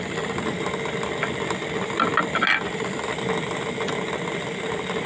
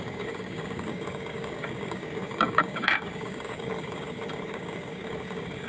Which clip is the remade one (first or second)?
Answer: second